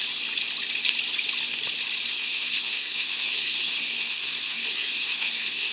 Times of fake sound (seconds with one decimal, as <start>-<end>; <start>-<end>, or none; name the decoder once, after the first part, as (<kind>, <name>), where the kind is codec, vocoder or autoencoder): 2.1-5.7 (codec, SNAC)